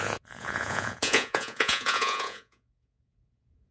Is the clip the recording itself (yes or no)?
no